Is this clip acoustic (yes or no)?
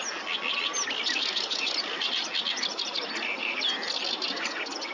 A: yes